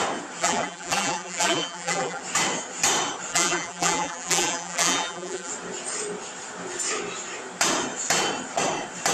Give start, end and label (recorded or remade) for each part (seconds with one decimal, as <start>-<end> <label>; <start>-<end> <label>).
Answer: 0.0-0.4 recorded; 0.4-2.2 remade; 2.2-3.3 recorded; 3.3-5.5 remade; 5.5-9.1 recorded